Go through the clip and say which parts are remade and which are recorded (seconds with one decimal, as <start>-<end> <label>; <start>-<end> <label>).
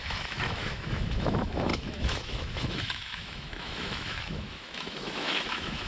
0.0-5.9 remade